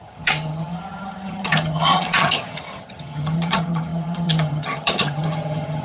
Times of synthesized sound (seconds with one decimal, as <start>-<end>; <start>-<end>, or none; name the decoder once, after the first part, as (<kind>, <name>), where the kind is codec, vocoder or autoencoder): 0.0-5.8 (vocoder, HiFi-GAN)

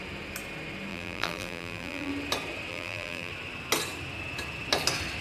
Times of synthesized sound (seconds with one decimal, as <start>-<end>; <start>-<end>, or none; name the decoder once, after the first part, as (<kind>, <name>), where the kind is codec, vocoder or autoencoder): 0.9-2.1 (vocoder, BigVGAN v2); 2.7-3.3

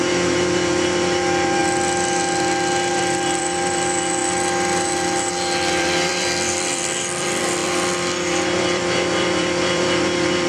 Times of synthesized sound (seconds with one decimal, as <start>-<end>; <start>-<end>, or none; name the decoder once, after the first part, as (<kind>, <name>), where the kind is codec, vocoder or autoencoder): 0.0-1.6 (vocoder, BigVGAN v2); 2.9-10.5

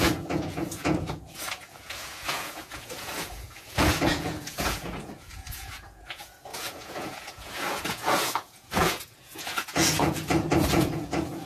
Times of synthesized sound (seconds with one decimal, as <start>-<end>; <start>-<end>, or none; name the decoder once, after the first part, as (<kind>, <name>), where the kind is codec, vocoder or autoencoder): 0.0-11.5 (vocoder, Vocos)

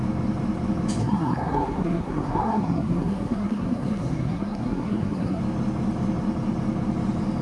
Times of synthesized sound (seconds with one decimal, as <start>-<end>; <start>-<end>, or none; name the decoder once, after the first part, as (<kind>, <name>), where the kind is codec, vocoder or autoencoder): 1.0-5.4 (codec, SNAC)